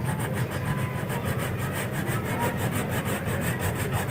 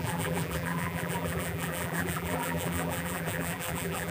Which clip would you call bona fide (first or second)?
first